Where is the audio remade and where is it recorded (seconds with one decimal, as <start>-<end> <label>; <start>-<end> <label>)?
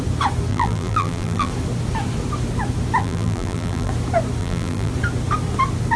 0.0-0.5 recorded; 0.5-1.5 remade; 1.5-3.0 recorded; 3.0-3.9 remade; 3.9-4.4 recorded; 4.4-4.9 remade; 4.9-6.0 recorded